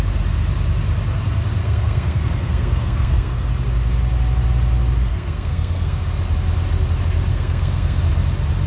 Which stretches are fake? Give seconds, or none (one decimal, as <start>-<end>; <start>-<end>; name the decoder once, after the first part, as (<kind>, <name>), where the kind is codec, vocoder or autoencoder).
1.6-3.5 (codec, SNAC); 5.1-6.0; 7.3-8.0